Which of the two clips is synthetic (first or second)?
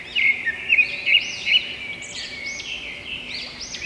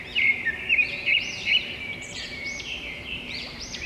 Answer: second